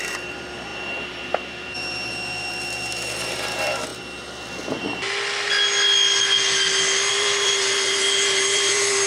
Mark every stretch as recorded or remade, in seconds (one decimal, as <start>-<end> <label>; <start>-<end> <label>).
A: 0.0-3.9 remade; 3.9-7.1 recorded; 7.1-9.1 remade